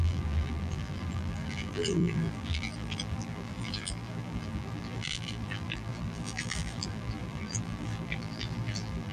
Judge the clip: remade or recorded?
remade